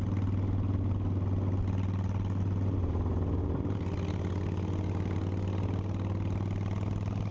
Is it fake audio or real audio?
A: real